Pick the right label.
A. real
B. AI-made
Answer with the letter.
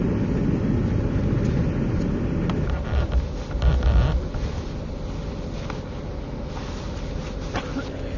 A